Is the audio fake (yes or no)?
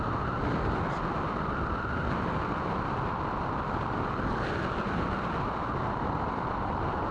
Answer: no